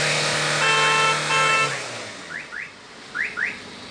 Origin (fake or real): real